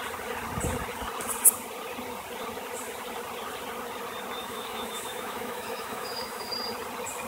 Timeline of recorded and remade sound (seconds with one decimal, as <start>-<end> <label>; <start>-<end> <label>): 0.0-4.4 recorded; 4.4-6.5 remade; 6.5-7.3 recorded